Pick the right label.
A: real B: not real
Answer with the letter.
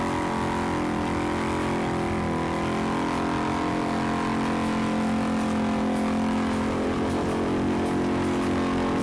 A